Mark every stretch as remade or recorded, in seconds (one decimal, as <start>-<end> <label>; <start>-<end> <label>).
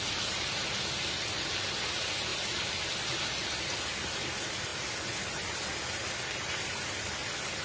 0.0-7.6 recorded